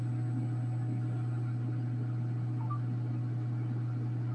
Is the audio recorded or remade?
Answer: recorded